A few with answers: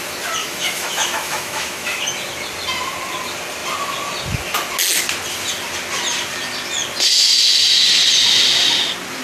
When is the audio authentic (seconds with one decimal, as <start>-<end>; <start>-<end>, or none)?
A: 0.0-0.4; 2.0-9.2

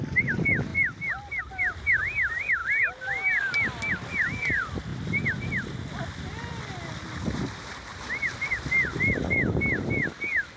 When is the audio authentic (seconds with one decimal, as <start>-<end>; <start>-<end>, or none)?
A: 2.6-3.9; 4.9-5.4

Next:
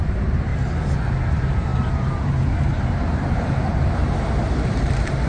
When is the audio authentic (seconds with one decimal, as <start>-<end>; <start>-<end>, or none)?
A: 0.5-1.2